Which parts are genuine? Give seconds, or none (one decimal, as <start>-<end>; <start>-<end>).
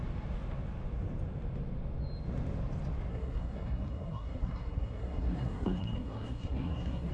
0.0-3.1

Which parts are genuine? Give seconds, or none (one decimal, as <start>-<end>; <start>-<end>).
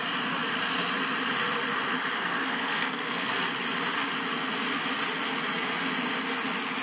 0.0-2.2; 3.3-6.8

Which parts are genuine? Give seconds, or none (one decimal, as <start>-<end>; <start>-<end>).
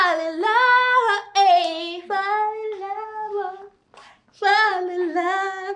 0.0-5.8